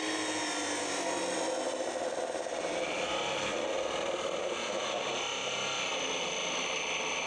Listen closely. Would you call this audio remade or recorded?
recorded